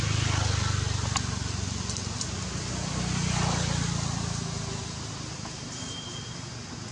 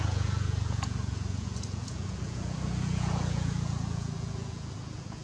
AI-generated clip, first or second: second